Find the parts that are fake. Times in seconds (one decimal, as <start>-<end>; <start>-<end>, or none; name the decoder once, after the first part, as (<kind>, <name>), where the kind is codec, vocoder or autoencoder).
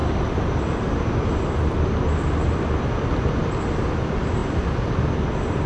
0.0-3.4 (vocoder, BigVGAN v2)